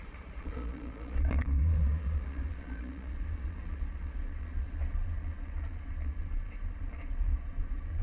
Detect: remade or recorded remade